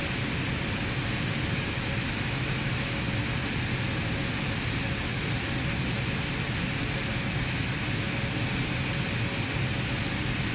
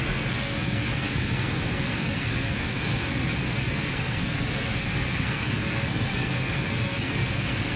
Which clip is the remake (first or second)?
second